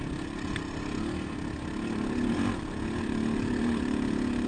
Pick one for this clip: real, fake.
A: real